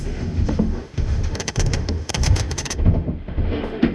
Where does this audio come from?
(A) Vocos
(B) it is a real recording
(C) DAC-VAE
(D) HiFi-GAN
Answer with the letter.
C